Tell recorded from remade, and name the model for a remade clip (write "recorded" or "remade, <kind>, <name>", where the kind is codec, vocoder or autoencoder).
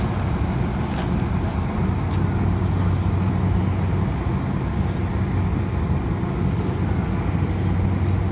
recorded